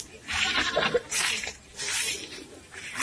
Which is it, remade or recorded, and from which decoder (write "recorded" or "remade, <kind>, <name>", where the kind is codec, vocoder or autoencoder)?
remade, vocoder, BigVGAN v2